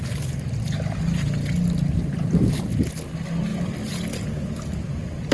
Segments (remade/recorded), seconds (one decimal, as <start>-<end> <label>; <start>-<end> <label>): 0.0-5.3 recorded